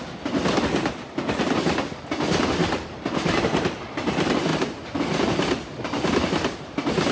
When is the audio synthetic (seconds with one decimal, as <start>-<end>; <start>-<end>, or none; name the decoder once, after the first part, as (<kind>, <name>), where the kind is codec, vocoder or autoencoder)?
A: 2.6-3.6 (vocoder, BigVGAN v2); 4.5-5.0